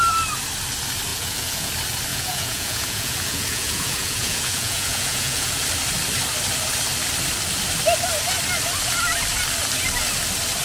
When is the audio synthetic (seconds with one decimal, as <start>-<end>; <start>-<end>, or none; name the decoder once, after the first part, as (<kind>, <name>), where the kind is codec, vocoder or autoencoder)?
1.1-1.7 (vocoder, Vocos); 2.1-5.5